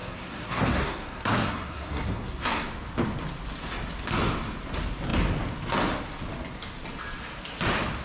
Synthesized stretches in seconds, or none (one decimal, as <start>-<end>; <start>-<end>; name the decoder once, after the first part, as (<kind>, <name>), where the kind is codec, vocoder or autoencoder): 0.0-2.7 (codec, SNAC)